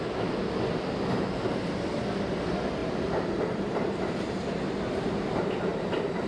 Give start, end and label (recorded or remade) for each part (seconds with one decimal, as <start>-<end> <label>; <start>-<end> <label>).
0.0-2.8 recorded; 2.8-4.6 remade; 4.6-5.7 recorded; 5.7-6.3 remade